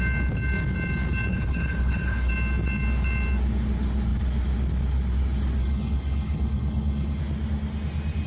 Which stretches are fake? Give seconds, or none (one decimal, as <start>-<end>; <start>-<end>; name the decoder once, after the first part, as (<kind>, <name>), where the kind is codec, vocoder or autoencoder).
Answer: 1.3-2.3 (codec, HILCodec); 5.6-7.2